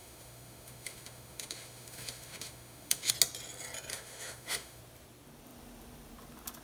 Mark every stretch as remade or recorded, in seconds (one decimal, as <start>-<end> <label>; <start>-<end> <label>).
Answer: 0.0-3.1 remade; 3.1-3.9 recorded; 3.9-4.8 remade; 4.8-6.6 recorded